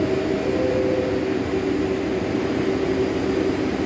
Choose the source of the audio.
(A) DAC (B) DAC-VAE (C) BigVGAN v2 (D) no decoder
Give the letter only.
D